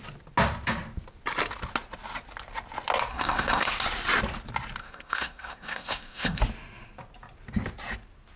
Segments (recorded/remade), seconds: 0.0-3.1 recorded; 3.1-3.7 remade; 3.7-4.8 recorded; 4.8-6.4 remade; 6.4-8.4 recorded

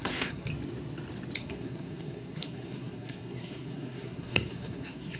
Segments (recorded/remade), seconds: 0.0-0.5 remade; 0.5-1.4 recorded; 1.4-5.2 remade